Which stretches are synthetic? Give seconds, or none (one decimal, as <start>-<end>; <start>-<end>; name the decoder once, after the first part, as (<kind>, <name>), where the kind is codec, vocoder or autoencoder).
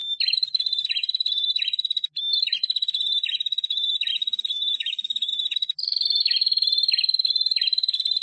4.1-5.3 (autoencoder, DAC-VAE)